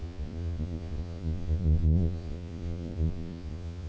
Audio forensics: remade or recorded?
remade